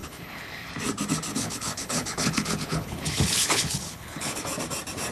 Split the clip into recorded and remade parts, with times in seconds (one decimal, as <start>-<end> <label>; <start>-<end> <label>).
0.0-0.7 remade; 0.7-1.3 recorded; 1.3-4.4 remade; 4.4-5.1 recorded